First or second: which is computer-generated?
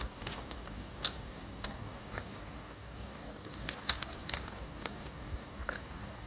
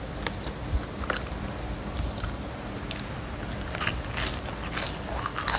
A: first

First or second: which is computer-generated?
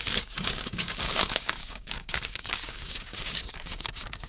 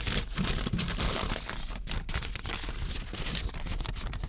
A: first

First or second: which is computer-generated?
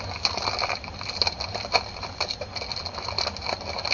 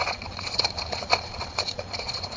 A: second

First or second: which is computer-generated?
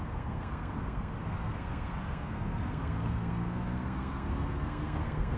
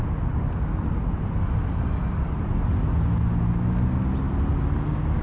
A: first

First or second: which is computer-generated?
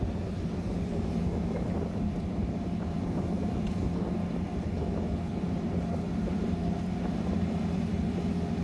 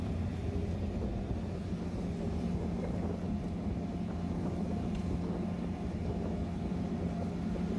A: first